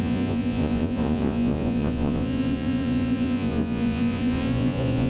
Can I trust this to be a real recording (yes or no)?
no